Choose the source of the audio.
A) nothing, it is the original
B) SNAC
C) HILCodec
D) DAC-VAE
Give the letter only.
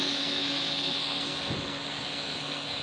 B